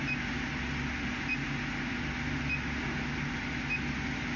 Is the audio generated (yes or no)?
no